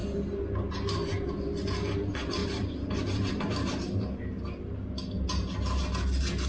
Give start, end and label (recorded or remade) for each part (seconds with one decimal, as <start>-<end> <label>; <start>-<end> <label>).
0.0-2.4 recorded; 2.4-4.4 remade; 4.4-6.5 recorded